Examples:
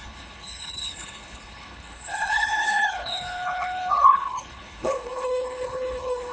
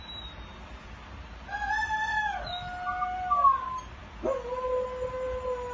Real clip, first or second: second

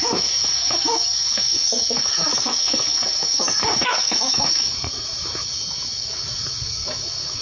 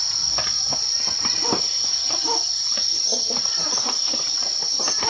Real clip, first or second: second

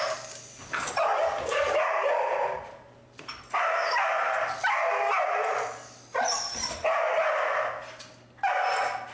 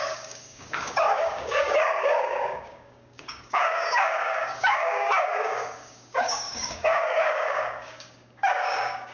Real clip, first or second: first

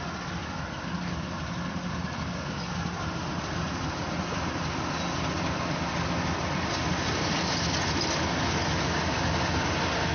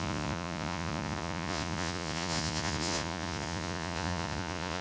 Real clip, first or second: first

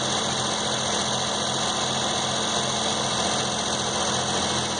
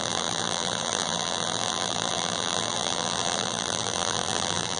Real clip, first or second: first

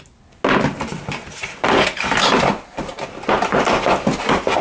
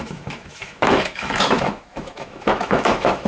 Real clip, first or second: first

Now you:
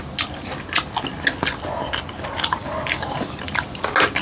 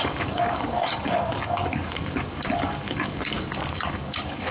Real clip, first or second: first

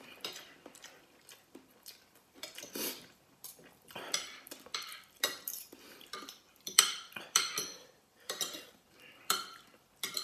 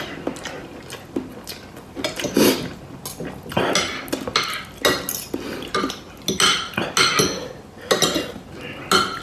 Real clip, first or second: second